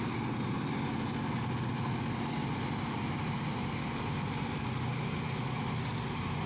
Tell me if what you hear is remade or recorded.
recorded